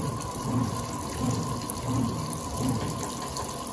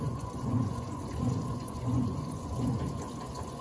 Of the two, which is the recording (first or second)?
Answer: first